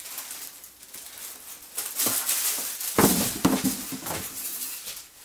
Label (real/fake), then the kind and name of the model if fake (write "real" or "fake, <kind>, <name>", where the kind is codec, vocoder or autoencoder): real